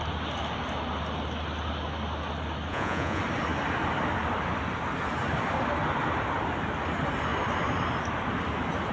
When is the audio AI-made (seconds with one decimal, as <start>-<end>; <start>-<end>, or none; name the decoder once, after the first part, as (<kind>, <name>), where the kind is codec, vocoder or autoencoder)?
2.7-3.2 (vocoder, Vocos)

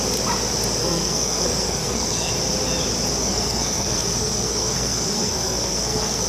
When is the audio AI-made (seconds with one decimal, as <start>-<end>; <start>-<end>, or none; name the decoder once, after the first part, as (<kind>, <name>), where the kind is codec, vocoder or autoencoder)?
0.8-2.3 (codec, SNAC); 3.2-6.3